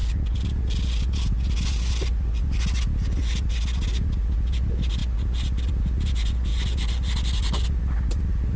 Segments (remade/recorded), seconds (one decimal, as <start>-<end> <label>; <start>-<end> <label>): 0.0-8.6 recorded